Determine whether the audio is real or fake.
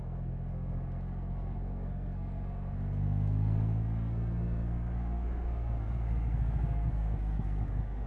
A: fake